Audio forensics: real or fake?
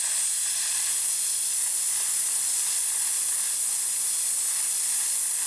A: real